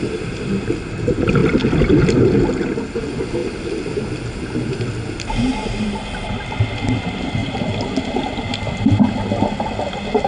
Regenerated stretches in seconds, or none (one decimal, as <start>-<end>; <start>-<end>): none